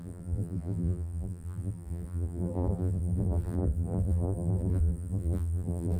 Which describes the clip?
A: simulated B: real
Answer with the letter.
A